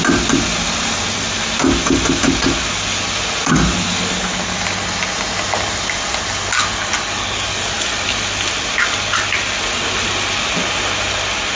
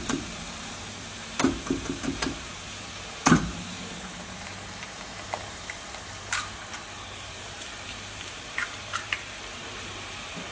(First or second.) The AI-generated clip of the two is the second